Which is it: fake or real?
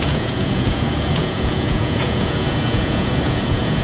fake